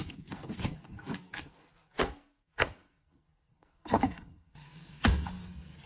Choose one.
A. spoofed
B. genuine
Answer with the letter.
A